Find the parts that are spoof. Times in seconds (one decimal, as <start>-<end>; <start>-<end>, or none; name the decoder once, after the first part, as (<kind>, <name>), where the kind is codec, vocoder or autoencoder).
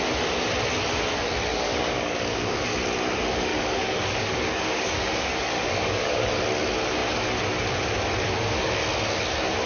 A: 1.5-2.8 (codec, DAC); 3.5-6.4